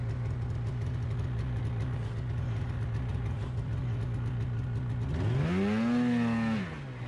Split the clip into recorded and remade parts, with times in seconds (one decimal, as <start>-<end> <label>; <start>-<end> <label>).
0.0-3.1 recorded; 3.1-3.7 remade; 3.7-7.1 recorded